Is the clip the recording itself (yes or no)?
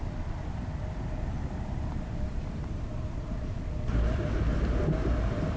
no